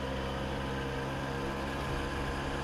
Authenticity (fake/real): real